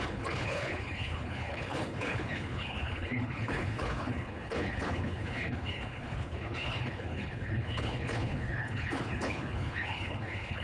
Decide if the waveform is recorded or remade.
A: remade